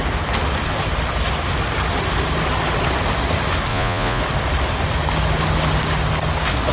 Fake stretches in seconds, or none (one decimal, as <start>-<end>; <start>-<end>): 3.7-4.2